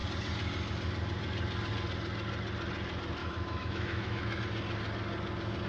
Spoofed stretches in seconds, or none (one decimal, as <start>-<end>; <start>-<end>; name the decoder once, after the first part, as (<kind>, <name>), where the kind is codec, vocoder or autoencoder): 3.2-4.4 (autoencoder, DAC-VAE)